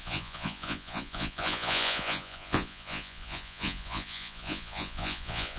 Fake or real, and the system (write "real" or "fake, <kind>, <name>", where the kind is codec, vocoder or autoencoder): fake, vocoder, Vocos